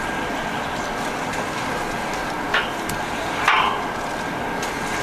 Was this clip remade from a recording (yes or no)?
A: yes